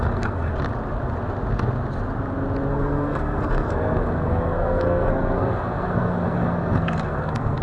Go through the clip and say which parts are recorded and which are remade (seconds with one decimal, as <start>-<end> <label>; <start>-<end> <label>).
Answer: 0.0-0.5 remade; 0.5-2.7 recorded; 2.7-7.6 remade